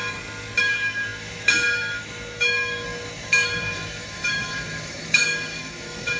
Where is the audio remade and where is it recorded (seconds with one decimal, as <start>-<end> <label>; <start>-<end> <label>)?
0.0-0.6 recorded; 0.6-6.2 remade